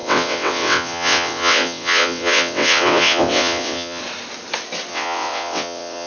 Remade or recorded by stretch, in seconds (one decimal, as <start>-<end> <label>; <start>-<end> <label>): 0.0-4.0 remade; 4.0-4.9 recorded; 4.9-6.1 remade